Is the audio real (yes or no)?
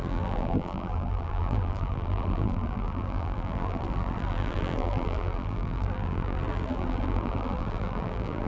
no